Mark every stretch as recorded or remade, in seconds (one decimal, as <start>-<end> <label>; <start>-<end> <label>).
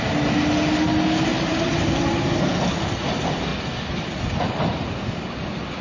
0.0-1.3 recorded; 1.3-2.0 remade; 2.0-5.8 recorded